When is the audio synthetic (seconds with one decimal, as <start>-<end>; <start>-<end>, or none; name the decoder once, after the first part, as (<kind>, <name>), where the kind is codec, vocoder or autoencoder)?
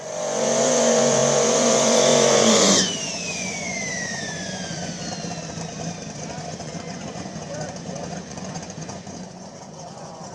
0.0-5.0 (vocoder, Vocos); 6.4-10.3